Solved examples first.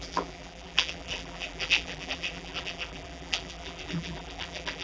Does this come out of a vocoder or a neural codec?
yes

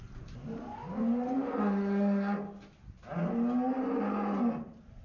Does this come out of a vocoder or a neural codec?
no